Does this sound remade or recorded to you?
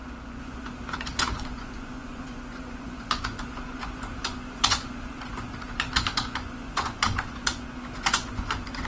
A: remade